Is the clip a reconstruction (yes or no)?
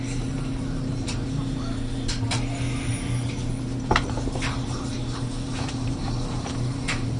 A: yes